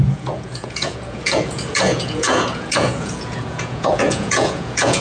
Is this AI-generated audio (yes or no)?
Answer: yes